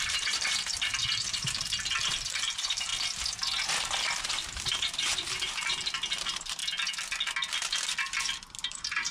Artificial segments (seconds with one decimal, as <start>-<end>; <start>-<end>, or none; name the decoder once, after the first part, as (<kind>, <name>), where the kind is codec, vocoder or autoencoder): 0.0-2.9 (vocoder, BigVGAN v2); 4.2-6.6; 8.7-9.1